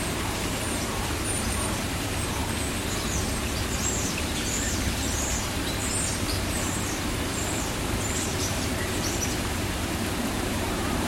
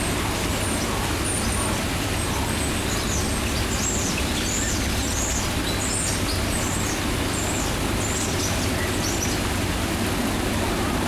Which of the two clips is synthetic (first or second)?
first